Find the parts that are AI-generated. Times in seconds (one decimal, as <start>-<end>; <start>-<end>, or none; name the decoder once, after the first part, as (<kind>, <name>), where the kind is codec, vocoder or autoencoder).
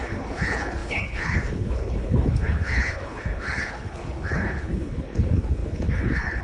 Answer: 0.0-6.4 (codec, HILCodec)